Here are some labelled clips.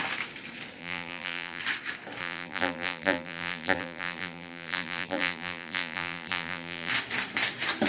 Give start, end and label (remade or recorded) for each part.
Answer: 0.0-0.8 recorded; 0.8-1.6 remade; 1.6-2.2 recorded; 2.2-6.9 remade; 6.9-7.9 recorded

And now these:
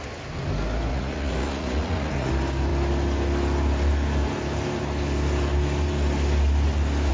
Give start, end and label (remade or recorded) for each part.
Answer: 0.0-0.9 recorded; 0.9-2.3 remade; 2.3-7.1 recorded